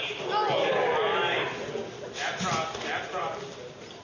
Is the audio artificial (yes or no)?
no